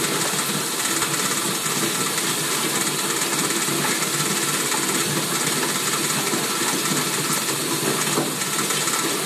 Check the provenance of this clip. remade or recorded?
recorded